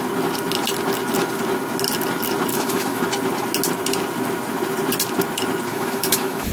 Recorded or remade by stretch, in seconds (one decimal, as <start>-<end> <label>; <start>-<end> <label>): 0.0-2.5 recorded; 2.5-3.0 remade; 3.0-5.7 recorded; 5.7-6.5 remade